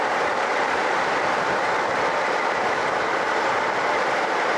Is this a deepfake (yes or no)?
no